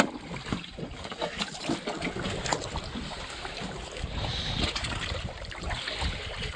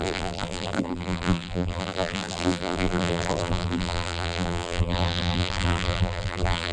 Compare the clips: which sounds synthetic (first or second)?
second